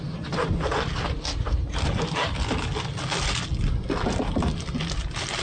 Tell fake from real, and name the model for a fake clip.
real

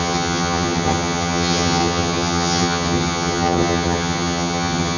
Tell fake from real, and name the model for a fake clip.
fake, vocoder, HiFi-GAN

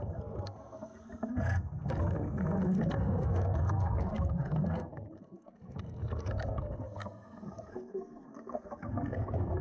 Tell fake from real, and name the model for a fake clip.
fake, codec, SNAC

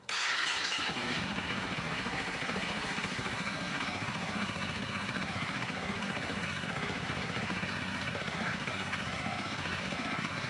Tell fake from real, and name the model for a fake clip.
fake, codec, SNAC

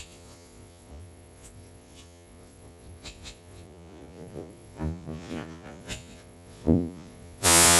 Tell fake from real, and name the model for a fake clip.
fake, vocoder, Vocos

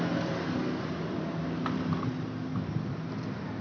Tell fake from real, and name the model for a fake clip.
real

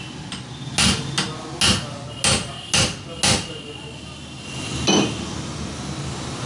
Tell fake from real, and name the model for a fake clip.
real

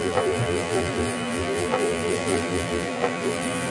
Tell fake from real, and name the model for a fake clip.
fake, vocoder, BigVGAN v2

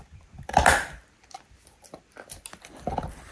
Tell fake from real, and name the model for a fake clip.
fake, vocoder, BigVGAN v2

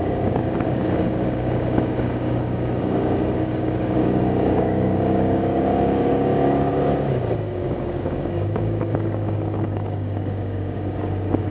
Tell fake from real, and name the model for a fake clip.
fake, codec, DAC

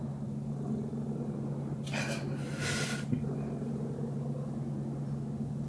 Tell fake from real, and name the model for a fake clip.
real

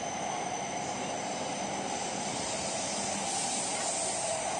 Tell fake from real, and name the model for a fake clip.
real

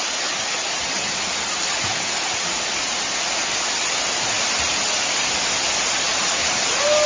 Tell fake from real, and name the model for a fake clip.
real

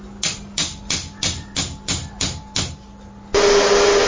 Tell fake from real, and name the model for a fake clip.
real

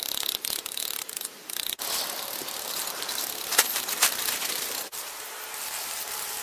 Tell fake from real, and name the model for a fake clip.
fake, vocoder, BigVGAN v2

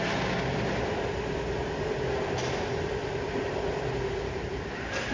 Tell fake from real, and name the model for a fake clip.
real